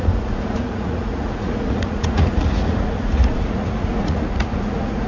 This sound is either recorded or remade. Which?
remade